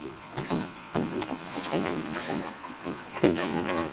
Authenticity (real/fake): fake